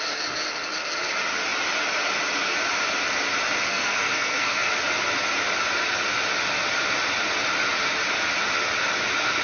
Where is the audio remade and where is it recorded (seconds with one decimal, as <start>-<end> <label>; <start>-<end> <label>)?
0.0-3.7 recorded; 3.7-4.7 remade; 4.7-9.4 recorded